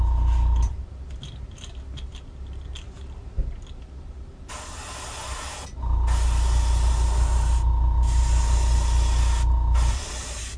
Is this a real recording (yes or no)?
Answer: yes